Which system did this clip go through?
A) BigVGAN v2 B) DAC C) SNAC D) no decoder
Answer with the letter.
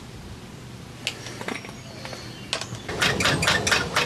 D